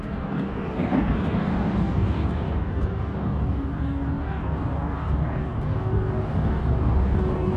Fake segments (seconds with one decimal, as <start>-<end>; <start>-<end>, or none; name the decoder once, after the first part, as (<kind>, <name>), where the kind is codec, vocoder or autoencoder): 0.0-7.6 (codec, DAC)